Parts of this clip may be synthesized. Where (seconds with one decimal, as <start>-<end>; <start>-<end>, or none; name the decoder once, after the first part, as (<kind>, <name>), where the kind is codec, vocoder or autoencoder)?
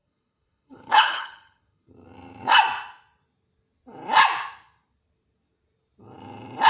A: 0.0-1.9 (codec, HILCodec)